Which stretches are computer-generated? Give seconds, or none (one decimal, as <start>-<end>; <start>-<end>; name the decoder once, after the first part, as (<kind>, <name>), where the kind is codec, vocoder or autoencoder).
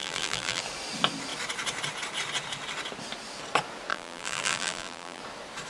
0.0-0.6 (vocoder, BigVGAN v2); 3.9-5.2